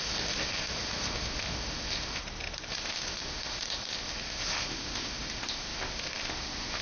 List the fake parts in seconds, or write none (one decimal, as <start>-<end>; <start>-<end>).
0.0-2.2; 2.7-6.8